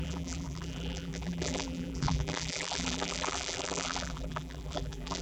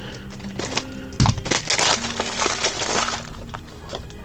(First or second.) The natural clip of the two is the second